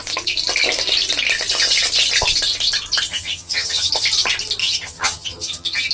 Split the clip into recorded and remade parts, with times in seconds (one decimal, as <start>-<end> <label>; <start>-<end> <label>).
0.0-3.1 recorded; 3.1-3.9 remade; 3.9-4.6 recorded; 4.6-5.9 remade